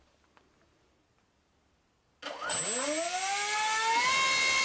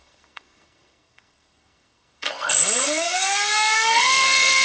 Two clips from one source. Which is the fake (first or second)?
second